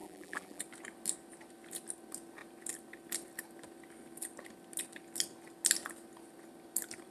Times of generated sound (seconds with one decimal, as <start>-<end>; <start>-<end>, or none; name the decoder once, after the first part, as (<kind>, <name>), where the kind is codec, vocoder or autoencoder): 0.0-0.6 (vocoder, BigVGAN v2)

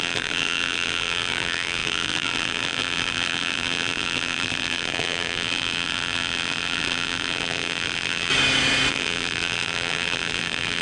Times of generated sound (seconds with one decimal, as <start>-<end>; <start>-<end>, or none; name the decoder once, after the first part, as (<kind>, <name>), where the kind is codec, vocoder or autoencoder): 0.0-8.3 (vocoder, BigVGAN v2); 8.9-10.8

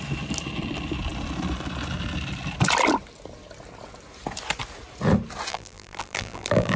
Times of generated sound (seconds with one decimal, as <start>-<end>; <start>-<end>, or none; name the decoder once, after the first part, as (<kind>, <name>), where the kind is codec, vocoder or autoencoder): 5.5-6.8 (vocoder, BigVGAN v2)

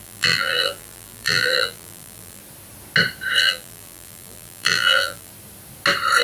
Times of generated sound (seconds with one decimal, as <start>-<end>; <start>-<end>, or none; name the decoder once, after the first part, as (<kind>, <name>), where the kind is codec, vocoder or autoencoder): 0.0-2.4 (vocoder, BigVGAN v2); 3.4-5.3